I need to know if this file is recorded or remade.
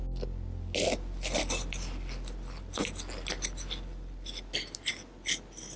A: recorded